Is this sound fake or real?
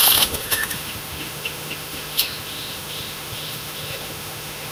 fake